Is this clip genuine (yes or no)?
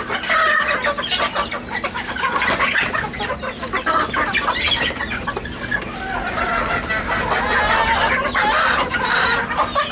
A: yes